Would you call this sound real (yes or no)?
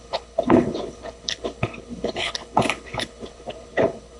no